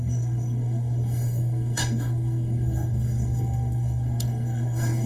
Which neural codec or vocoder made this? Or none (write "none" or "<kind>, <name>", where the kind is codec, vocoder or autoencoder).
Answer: codec, SNAC